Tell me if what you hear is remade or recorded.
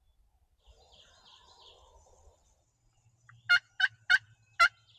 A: recorded